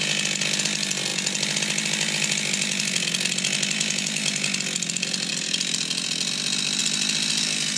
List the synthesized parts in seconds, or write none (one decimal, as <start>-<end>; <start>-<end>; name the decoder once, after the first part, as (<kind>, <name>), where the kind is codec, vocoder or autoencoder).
none